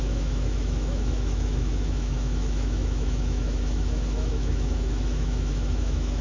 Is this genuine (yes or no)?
no